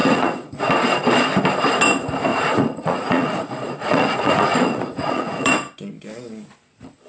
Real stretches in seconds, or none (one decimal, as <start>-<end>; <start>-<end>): 0.6-2.3; 5.5-7.1